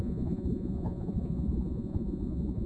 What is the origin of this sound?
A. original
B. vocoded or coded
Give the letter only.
B